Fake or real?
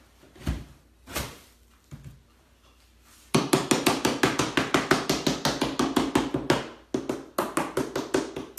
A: real